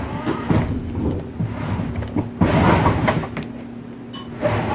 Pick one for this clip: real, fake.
real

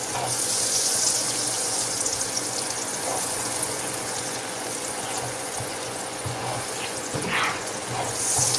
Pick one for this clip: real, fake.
fake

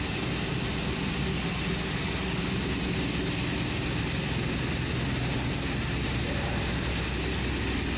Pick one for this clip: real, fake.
real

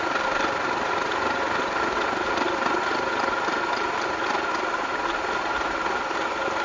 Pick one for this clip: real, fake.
real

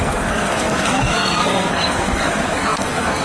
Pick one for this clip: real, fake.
fake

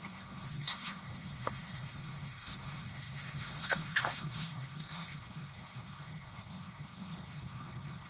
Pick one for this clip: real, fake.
fake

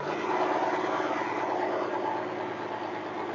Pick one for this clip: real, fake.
real